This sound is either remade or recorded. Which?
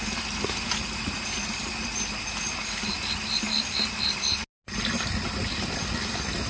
recorded